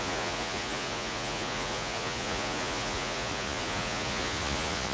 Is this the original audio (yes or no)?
no